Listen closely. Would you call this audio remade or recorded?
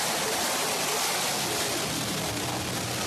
recorded